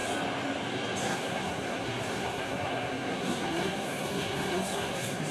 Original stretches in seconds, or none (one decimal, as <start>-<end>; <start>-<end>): 0.0-1.0